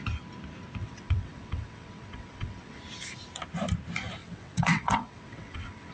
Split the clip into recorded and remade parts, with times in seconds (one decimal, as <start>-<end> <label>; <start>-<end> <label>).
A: 0.0-0.8 recorded; 0.8-2.8 remade; 2.8-4.2 recorded; 4.2-5.9 remade